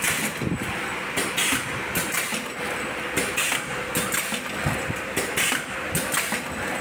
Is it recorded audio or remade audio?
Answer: recorded